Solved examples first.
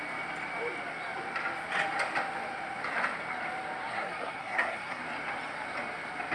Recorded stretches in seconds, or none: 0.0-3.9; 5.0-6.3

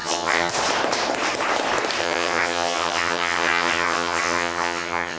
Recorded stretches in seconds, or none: 0.5-2.0

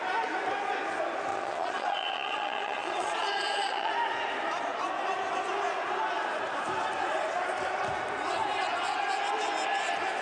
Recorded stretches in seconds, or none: 0.0-1.3; 3.9-10.2

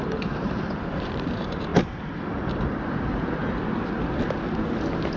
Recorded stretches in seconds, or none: 1.7-2.3; 3.4-5.2

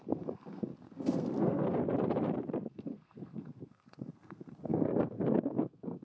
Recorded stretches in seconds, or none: 1.8-2.7